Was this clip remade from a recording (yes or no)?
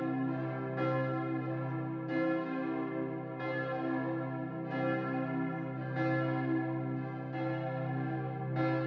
no